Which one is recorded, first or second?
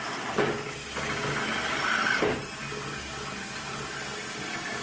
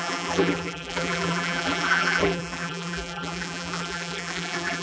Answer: first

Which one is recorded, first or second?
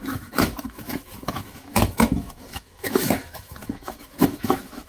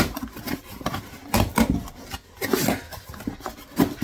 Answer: second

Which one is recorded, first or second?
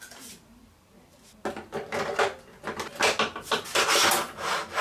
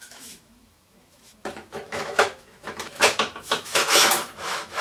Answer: first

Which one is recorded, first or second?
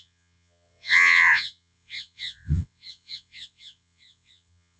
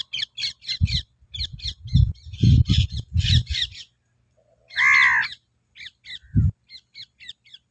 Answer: second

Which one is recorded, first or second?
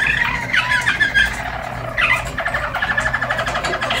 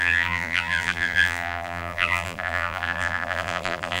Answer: first